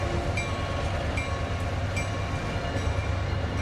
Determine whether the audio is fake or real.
real